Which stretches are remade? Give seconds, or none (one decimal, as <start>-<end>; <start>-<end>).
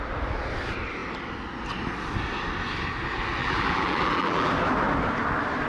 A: 3.4-4.5